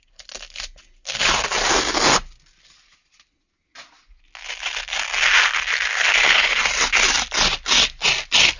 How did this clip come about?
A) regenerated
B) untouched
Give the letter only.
B